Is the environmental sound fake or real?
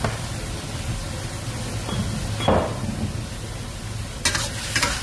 real